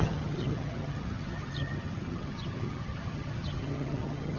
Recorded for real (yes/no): no